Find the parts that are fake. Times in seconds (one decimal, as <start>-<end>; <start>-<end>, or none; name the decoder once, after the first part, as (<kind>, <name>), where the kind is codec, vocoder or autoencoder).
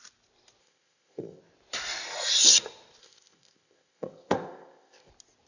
0.6-1.4 (codec, ZipCodec); 3.0-5.1